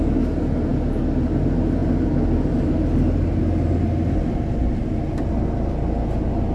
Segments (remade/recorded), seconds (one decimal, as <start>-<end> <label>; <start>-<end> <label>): 0.0-6.5 recorded

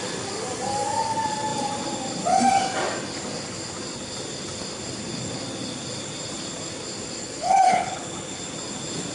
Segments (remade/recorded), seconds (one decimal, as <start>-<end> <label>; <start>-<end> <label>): 0.0-7.2 recorded; 7.2-8.3 remade; 8.3-9.1 recorded

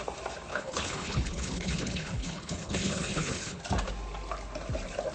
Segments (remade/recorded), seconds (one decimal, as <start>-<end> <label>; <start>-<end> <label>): 0.0-0.5 recorded; 0.5-3.6 remade; 3.6-5.1 recorded

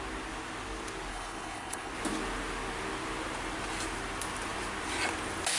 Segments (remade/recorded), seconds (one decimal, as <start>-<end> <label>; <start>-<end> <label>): 0.0-1.1 recorded; 1.1-1.9 remade; 1.9-5.6 recorded

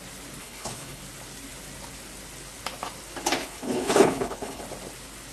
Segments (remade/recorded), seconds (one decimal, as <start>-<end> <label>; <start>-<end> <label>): 0.0-0.4 recorded; 0.4-1.0 remade; 1.0-3.4 recorded; 3.4-4.6 remade; 4.6-5.3 recorded

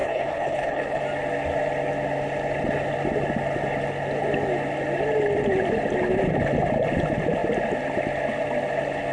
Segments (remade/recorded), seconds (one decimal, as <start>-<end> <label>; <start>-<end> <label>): 0.0-1.0 remade; 1.0-9.1 recorded